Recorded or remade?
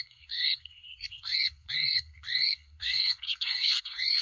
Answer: remade